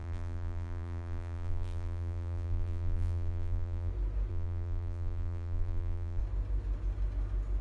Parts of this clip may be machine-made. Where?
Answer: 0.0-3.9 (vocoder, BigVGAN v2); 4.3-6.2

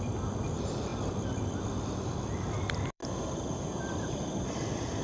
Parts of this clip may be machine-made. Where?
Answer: 0.0-3.0 (vocoder, BigVGAN v2); 3.6-5.0

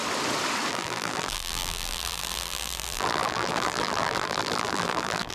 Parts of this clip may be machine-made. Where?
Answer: 0.7-5.3 (vocoder, BigVGAN v2)

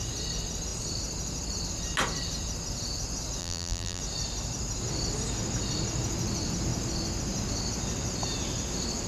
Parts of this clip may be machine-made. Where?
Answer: 3.4-4.0 (vocoder, BigVGAN v2)

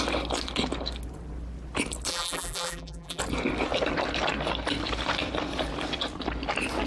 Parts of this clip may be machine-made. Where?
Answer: 2.1-3.2 (vocoder, BigVGAN v2)

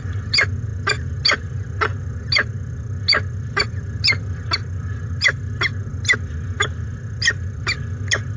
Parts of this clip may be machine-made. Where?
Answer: none

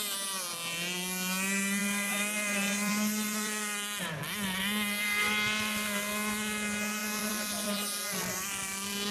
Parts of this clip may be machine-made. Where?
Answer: 1.8-4.2 (vocoder, BigVGAN v2); 7.0-9.1

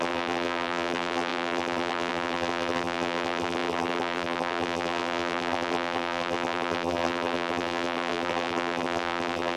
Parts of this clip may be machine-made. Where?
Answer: 0.0-9.6 (vocoder, BigVGAN v2)